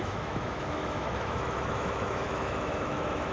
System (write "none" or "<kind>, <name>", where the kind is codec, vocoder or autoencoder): autoencoder, DAC-VAE